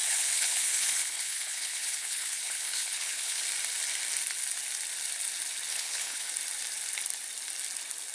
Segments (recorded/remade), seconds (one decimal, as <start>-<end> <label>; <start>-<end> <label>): 0.0-3.4 remade; 3.4-5.7 recorded; 5.7-6.3 remade; 6.3-8.1 recorded